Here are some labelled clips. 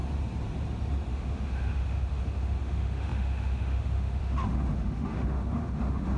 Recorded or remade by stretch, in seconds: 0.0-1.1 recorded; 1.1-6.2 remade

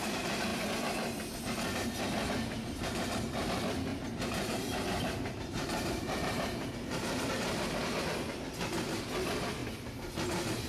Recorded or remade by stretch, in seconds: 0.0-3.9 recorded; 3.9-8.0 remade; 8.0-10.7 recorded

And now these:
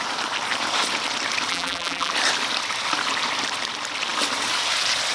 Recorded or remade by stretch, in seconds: 0.0-1.5 recorded; 1.5-2.1 remade; 2.1-5.1 recorded

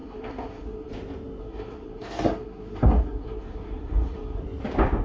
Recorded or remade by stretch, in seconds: 0.0-0.9 remade; 0.9-1.4 recorded; 1.4-4.4 remade; 4.4-5.0 recorded

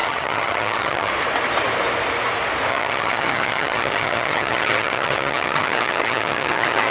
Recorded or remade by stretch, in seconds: 0.0-1.1 remade; 1.1-2.7 recorded; 2.7-6.9 remade